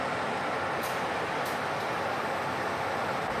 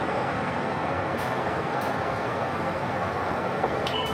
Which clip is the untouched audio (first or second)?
first